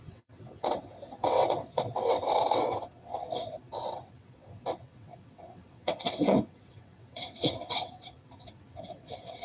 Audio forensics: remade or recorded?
remade